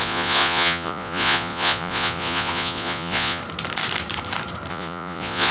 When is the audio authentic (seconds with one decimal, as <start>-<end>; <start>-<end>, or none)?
3.4-4.7